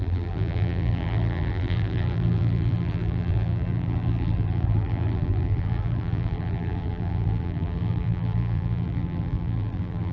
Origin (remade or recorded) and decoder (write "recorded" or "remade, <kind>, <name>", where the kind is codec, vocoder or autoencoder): remade, vocoder, BigVGAN v2